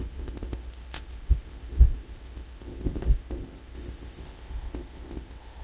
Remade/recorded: remade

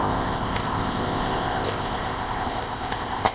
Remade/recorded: remade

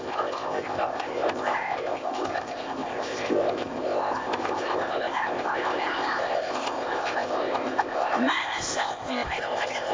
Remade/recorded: remade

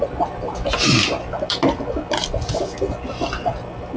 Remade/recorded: recorded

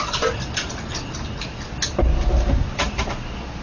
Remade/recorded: recorded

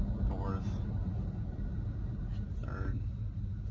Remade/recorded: recorded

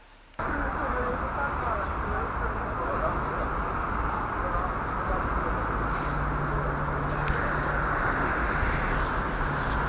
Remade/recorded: recorded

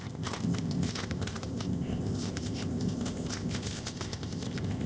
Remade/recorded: remade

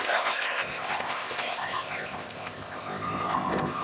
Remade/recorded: remade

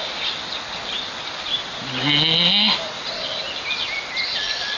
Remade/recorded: recorded